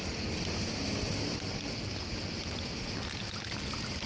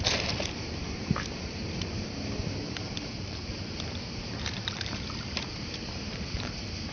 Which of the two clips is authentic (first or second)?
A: first